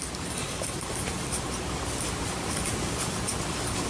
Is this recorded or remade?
recorded